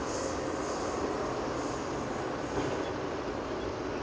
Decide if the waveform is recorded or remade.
recorded